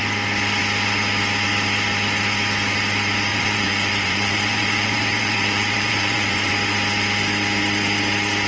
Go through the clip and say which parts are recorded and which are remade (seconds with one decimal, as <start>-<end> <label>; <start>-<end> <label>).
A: 0.0-3.3 recorded; 3.3-6.5 remade; 6.5-8.5 recorded